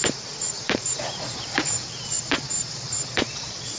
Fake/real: fake